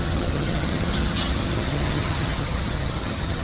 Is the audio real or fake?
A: fake